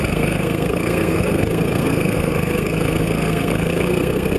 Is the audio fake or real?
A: fake